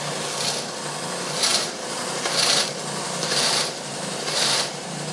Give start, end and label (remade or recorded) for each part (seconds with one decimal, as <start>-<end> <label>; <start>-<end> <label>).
0.0-1.5 recorded; 1.5-2.2 remade; 2.2-3.2 recorded; 3.2-5.1 remade